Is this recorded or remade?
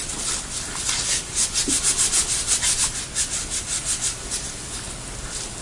recorded